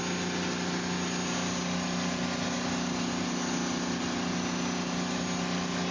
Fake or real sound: real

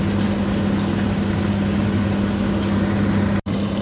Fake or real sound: real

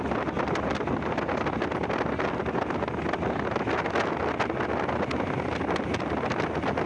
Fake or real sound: real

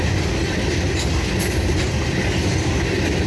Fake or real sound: real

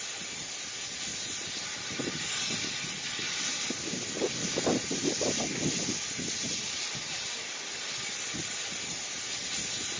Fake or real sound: real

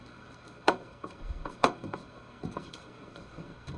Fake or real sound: fake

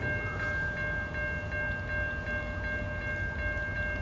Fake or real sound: real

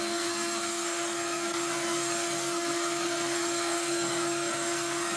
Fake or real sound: fake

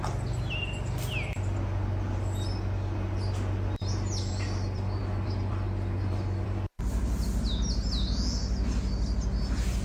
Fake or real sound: real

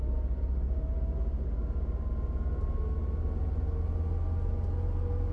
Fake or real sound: real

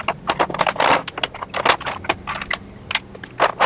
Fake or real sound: real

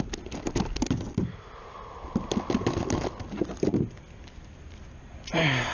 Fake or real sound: real